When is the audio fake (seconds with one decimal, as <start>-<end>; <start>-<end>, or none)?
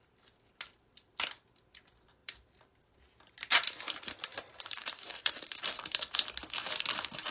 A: 2.2-2.8; 4.3-5.3